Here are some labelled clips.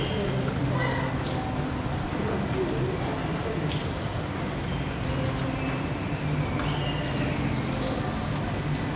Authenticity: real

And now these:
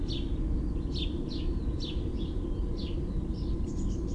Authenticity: real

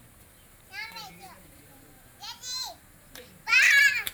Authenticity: fake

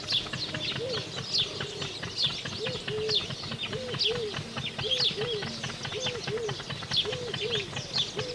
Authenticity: real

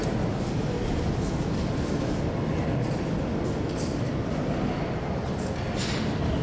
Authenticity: real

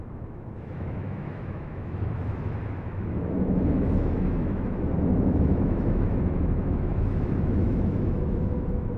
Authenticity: fake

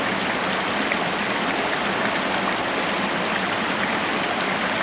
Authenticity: real